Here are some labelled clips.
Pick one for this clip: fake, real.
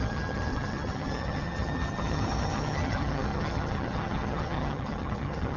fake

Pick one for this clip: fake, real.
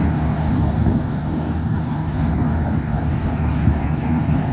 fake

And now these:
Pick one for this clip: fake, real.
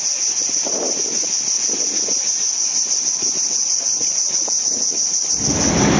real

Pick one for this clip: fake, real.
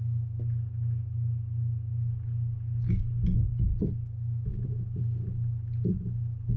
real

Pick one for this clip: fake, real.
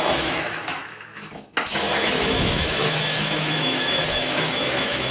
fake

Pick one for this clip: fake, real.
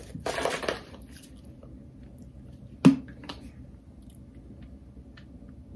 real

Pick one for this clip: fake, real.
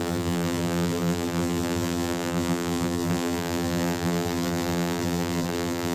fake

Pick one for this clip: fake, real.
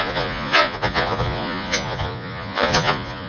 fake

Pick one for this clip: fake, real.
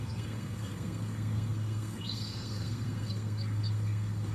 fake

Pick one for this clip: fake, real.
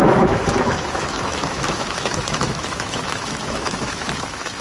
fake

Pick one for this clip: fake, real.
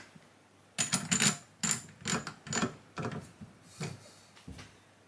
real